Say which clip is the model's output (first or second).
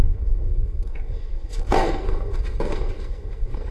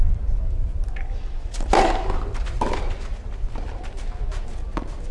first